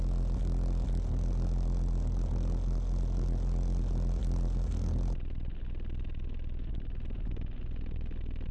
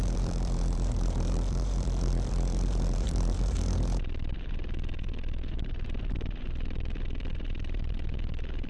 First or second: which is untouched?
first